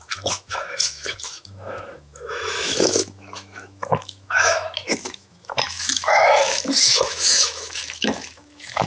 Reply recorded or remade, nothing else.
remade